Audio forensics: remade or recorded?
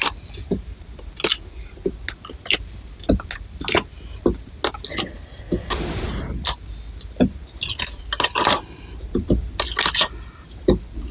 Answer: recorded